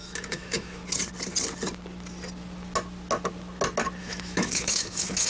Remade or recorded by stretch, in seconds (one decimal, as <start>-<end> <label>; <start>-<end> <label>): 0.0-0.8 remade; 0.8-4.0 recorded; 4.0-5.3 remade